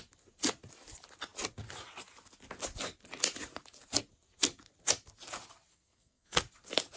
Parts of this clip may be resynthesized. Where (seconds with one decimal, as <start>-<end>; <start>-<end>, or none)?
5.7-6.4